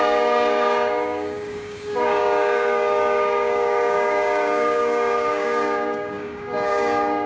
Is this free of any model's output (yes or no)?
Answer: no